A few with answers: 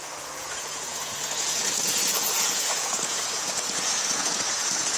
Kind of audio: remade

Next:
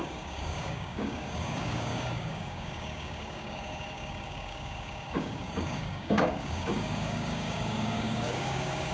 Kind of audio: remade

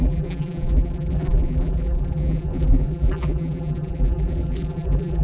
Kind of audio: remade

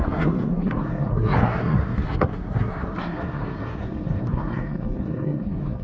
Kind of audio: remade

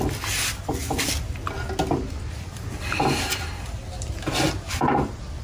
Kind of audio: recorded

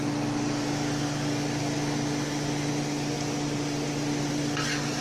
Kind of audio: recorded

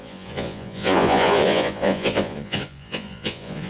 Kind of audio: remade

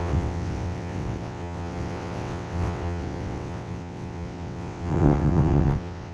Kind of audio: remade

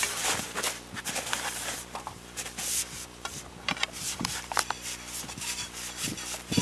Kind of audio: remade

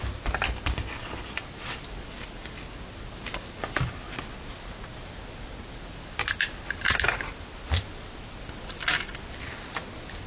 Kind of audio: recorded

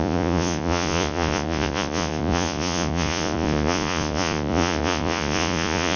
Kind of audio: remade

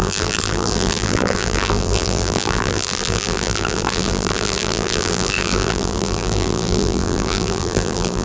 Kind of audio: remade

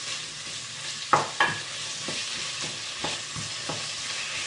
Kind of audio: recorded